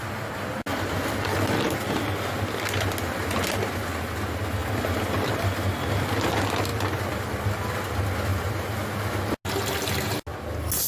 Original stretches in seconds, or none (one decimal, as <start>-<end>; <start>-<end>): 0.0-4.6; 5.3-8.3; 9.2-10.9